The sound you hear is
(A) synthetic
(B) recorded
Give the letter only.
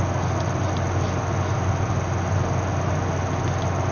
B